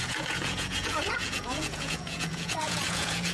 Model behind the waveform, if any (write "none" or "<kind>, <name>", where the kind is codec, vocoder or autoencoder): vocoder, Vocos